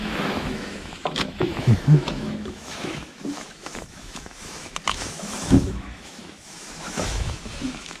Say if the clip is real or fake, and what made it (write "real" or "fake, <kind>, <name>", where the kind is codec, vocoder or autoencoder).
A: fake, autoencoder, DAC-VAE